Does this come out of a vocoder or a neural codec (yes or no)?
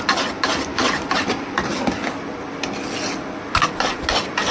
no